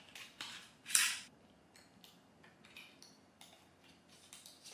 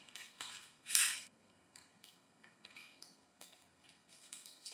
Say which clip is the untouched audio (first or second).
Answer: first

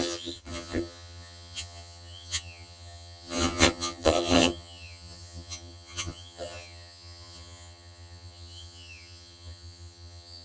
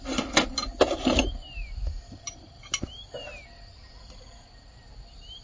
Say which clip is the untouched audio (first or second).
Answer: second